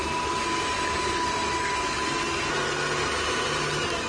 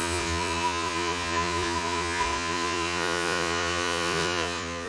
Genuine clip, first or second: first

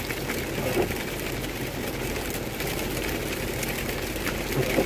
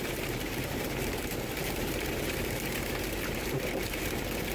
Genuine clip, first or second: first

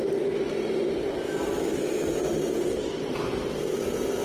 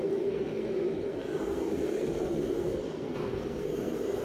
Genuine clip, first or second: first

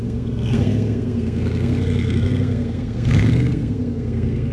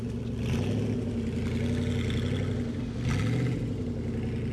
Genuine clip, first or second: second